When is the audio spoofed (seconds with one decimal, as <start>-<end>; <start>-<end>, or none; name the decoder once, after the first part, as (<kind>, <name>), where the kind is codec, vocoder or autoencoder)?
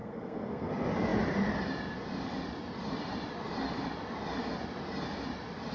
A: 0.0-0.7 (codec, SNAC)